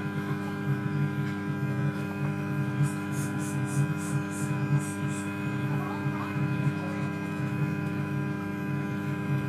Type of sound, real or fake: fake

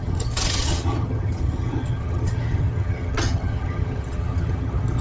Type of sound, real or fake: fake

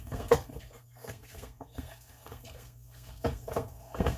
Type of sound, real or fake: fake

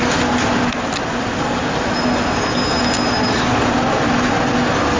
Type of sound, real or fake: real